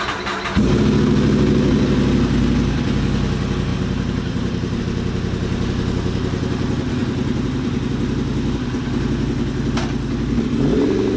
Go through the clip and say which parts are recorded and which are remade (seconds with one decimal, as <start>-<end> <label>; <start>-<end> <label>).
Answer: 0.0-3.7 recorded; 3.7-4.8 remade; 4.8-7.0 recorded; 7.0-7.9 remade; 7.9-11.2 recorded